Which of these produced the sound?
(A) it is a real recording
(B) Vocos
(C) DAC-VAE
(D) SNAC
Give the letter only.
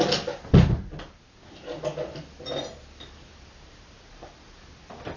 A